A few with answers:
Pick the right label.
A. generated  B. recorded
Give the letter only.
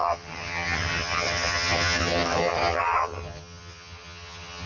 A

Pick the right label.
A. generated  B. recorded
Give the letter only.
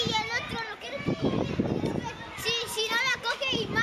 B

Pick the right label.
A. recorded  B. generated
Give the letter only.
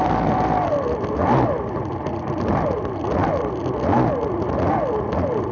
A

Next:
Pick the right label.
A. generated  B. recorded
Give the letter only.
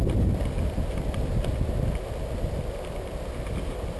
B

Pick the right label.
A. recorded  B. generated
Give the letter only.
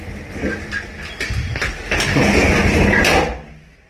A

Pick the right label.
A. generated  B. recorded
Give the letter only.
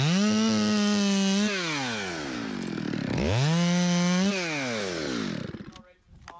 B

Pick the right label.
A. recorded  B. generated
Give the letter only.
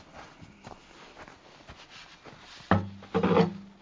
A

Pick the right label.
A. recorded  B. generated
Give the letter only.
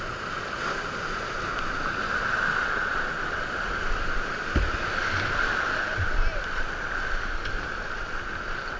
A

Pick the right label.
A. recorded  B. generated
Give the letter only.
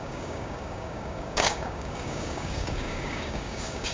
B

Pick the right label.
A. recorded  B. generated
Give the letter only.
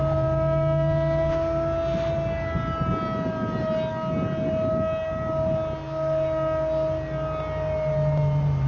A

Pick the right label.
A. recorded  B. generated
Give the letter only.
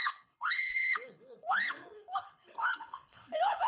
B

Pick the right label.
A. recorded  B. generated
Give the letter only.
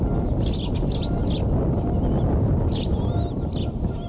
A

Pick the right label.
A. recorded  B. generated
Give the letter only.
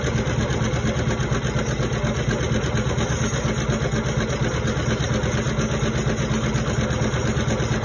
A